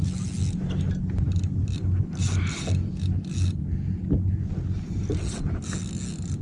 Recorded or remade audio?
recorded